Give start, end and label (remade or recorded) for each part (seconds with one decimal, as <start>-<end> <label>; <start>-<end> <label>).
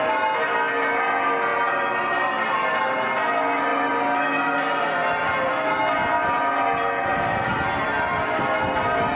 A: 0.0-9.2 recorded